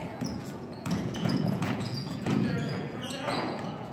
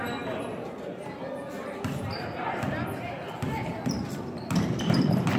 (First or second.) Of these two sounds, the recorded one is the second